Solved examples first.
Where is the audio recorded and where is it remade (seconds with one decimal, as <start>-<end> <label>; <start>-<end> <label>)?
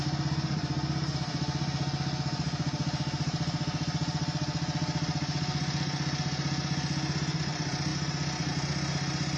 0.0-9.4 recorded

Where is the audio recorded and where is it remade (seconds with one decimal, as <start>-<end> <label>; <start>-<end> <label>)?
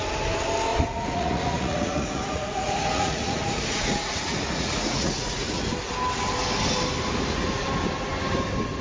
0.0-0.7 recorded; 0.7-5.6 remade; 5.6-8.8 recorded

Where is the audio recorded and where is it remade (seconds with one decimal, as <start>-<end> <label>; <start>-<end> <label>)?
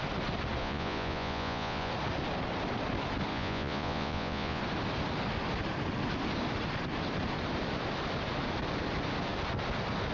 0.0-0.6 recorded; 0.6-1.9 remade; 1.9-3.3 recorded; 3.3-4.6 remade; 4.6-10.1 recorded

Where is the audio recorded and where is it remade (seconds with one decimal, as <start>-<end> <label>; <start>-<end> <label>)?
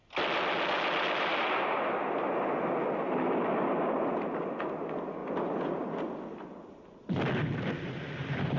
0.0-8.6 recorded